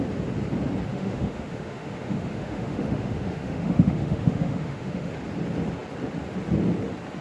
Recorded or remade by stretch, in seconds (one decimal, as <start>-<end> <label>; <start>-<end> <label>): 0.0-0.9 recorded; 0.9-5.1 remade; 5.1-7.2 recorded